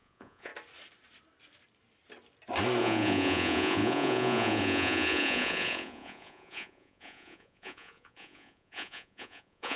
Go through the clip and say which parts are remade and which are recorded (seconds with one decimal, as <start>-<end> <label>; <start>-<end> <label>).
0.0-0.5 remade; 0.5-2.8 recorded; 2.8-9.8 remade